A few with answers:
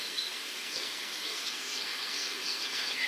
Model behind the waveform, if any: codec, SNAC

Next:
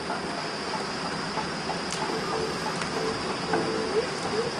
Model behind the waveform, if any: none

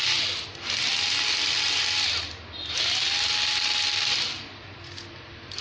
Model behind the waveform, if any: none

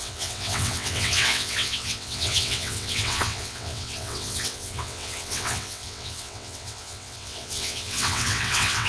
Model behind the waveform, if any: vocoder, WaveNeXt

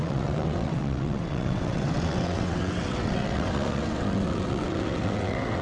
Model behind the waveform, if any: vocoder, WaveNeXt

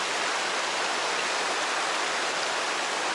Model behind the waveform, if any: none